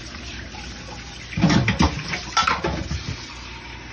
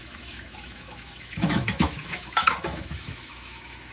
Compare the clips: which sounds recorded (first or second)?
first